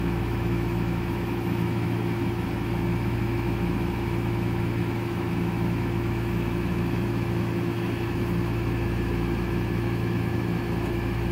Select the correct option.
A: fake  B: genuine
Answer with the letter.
A